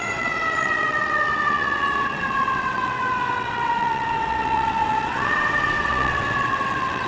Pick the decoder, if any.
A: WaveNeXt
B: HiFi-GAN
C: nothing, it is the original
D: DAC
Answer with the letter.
A